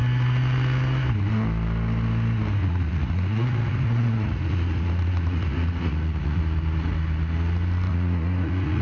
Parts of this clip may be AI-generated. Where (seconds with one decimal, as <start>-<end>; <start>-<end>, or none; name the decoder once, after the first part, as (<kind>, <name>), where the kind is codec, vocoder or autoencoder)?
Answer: 2.6-6.4 (vocoder, Vocos); 7.9-8.8

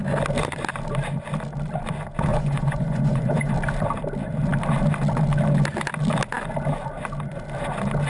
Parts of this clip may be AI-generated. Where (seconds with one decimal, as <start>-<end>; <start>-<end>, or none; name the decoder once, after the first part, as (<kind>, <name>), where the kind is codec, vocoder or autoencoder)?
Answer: 2.3-3.5 (vocoder, Vocos)

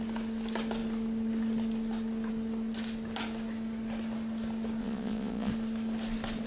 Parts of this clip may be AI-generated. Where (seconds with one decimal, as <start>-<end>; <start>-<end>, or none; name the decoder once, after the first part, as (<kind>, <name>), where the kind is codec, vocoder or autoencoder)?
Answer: 4.8-5.5 (vocoder, Vocos)

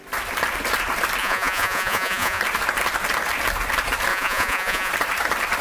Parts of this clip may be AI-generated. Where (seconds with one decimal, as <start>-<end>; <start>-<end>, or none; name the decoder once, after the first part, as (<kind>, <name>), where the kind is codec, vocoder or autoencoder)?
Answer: 1.2-2.4 (vocoder, Vocos); 4.1-4.9